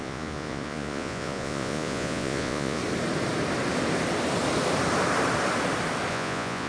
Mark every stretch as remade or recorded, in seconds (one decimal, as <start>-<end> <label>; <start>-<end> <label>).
0.0-2.8 remade; 2.8-6.1 recorded; 6.1-6.7 remade